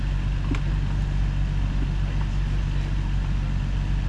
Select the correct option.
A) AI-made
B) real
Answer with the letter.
B